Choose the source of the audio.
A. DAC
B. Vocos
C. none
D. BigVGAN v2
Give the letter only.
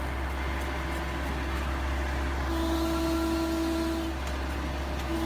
C